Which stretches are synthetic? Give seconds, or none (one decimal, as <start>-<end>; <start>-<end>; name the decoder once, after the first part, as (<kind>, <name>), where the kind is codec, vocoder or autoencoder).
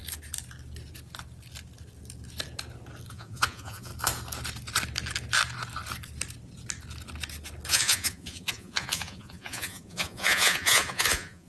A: 3.1-3.9 (vocoder, Vocos); 7.7-11.5